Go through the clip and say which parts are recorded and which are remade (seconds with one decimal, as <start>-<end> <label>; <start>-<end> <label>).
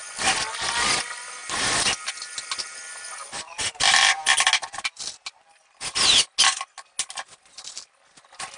0.0-8.6 recorded